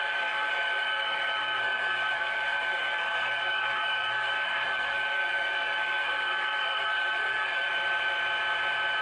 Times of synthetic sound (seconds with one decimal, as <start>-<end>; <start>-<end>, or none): 0.0-7.7